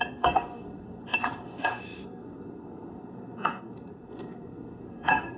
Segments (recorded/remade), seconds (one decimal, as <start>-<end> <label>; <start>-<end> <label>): 0.0-5.4 remade

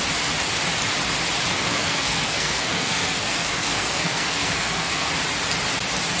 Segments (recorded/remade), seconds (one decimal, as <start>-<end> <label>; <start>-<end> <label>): 0.0-1.5 recorded; 1.5-5.1 remade; 5.1-6.2 recorded

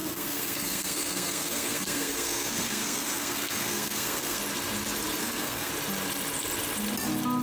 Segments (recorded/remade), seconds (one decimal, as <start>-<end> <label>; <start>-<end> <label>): 0.0-4.4 remade; 4.4-5.2 recorded; 5.2-5.7 remade; 5.7-7.4 recorded